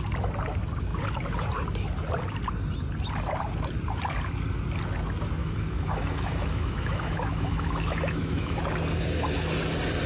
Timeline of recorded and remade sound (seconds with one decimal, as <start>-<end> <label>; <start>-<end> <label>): 0.0-5.4 recorded; 5.4-8.6 remade; 8.6-10.1 recorded